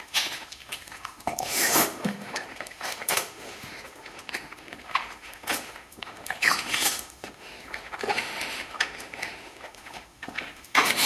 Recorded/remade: remade